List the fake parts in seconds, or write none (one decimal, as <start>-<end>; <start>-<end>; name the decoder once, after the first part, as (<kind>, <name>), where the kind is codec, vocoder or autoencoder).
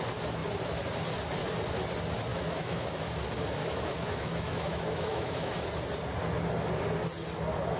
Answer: 2.3-3.1 (autoencoder, DAC-VAE); 3.6-5.6